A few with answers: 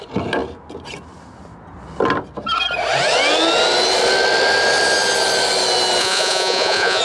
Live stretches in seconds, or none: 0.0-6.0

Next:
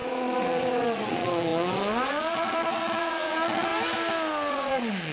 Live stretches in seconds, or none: 3.7-4.5

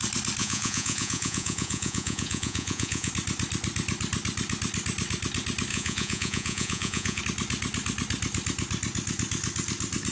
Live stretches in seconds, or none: 0.0-0.4; 3.1-5.7; 7.2-10.1

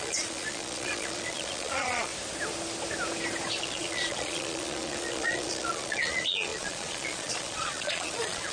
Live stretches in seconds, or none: 2.1-3.6